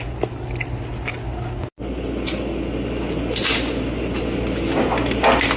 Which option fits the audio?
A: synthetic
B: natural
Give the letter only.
B